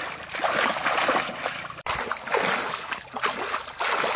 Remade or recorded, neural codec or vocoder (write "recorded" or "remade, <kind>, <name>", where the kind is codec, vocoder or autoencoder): recorded